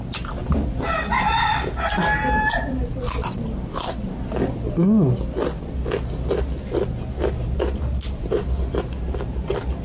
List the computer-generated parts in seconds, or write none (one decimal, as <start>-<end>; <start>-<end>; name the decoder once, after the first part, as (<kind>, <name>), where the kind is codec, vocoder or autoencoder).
0.0-2.8 (vocoder, BigVGAN v2); 7.5-9.8